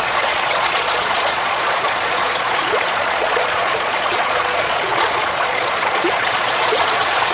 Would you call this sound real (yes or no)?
no